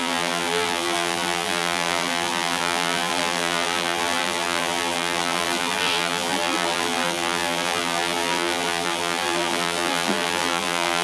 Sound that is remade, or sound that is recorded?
remade